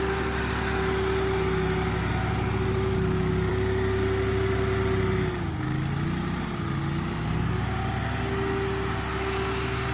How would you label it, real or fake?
real